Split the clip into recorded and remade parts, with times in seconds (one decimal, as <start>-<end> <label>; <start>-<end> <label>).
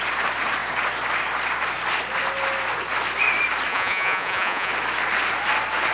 0.0-3.7 recorded; 3.7-4.7 remade; 4.7-5.9 recorded